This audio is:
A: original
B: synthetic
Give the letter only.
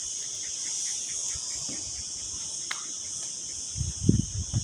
A